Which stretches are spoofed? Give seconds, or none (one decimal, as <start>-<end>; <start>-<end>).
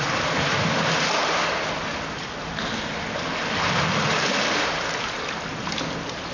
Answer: none